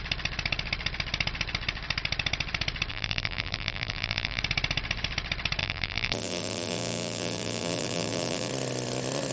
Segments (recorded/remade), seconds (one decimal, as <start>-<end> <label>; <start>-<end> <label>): 0.0-2.9 recorded; 2.9-4.4 remade; 4.4-5.6 recorded; 5.6-8.5 remade; 8.5-9.3 recorded